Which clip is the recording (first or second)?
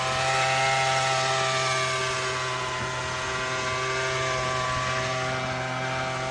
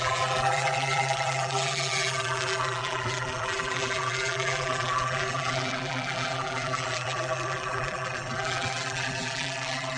first